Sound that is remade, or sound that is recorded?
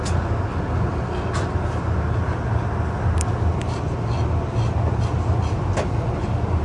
recorded